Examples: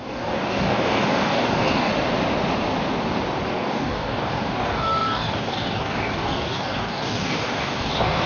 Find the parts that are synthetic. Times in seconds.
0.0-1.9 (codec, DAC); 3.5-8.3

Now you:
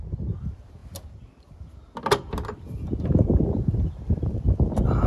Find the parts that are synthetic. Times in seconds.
none

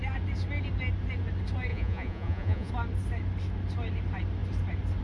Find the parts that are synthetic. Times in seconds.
1.7-2.7 (vocoder, Vocos)

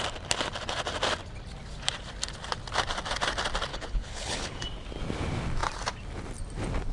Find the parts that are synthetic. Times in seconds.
3.7-4.6 (codec, HILCodec)

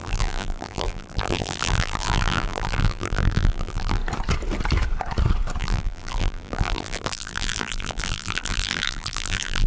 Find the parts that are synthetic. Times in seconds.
0.0-4.0 (vocoder, BigVGAN v2); 5.6-9.7